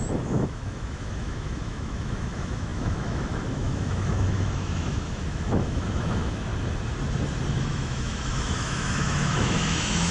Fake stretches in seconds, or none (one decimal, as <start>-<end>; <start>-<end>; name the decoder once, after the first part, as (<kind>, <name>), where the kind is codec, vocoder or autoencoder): 0.0-6.5 (autoencoder, DAC-VAE); 7.6-10.1